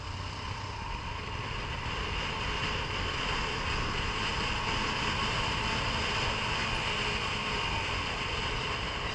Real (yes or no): yes